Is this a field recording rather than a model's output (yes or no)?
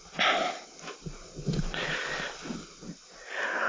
yes